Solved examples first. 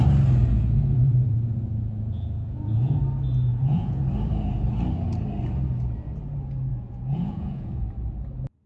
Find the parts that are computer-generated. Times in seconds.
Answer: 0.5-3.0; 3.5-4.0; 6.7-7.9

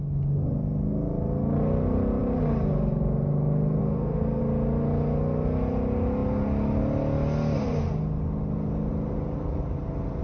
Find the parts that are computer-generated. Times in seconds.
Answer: 3.8-4.4

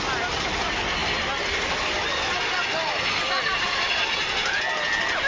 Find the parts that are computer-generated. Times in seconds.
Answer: none

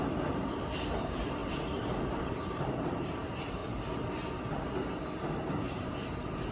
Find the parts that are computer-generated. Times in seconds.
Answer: 0.0-3.6; 5.6-6.5

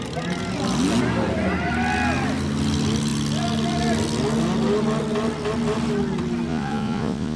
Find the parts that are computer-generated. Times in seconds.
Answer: 6.5-7.4

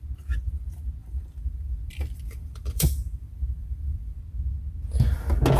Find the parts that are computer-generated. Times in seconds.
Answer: 1.0-4.2

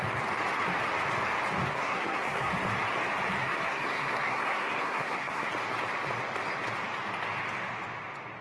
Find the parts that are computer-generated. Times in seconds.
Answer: 1.7-2.5; 3.4-5.5

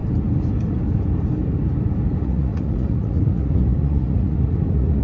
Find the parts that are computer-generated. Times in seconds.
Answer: 2.2-5.0